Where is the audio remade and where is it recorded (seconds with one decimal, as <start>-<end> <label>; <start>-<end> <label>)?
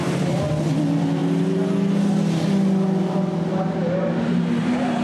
0.0-1.2 remade; 1.2-4.2 recorded; 4.2-5.0 remade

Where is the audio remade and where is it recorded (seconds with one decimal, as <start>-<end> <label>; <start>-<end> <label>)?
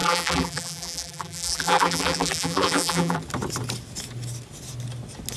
0.0-3.2 remade; 3.2-5.4 recorded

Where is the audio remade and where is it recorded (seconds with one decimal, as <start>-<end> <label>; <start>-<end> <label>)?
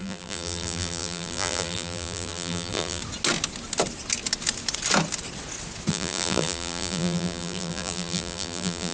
0.0-3.0 remade; 3.0-5.9 recorded; 5.9-8.9 remade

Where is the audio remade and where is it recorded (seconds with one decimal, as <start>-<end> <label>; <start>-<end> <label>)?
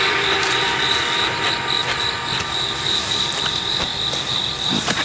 0.0-5.0 remade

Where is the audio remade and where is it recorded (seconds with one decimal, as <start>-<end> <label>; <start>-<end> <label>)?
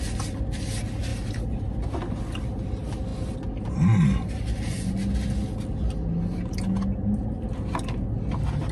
0.0-1.1 recorded; 1.1-1.7 remade; 1.7-8.7 recorded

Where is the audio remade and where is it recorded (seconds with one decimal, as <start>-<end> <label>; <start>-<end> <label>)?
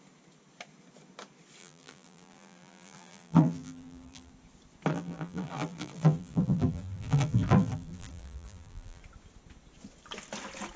0.0-1.6 recorded; 1.6-4.3 remade; 4.3-4.9 recorded; 4.9-9.0 remade; 9.0-10.8 recorded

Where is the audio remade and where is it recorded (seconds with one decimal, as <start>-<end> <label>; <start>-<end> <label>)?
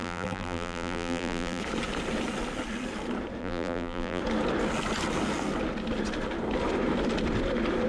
0.0-1.6 remade; 1.6-3.4 recorded; 3.4-4.2 remade; 4.2-7.9 recorded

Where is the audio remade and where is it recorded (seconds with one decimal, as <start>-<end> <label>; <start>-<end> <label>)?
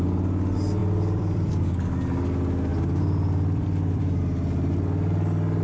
0.0-0.8 recorded; 0.8-1.5 remade; 1.5-2.7 recorded; 2.7-4.2 remade; 4.2-5.6 recorded